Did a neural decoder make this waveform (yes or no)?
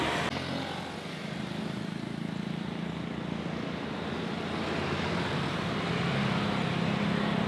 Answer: no